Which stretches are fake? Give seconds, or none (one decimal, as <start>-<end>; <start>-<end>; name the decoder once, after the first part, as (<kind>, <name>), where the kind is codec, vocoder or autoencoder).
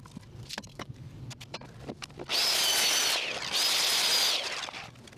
0.7-1.2 (codec, DAC)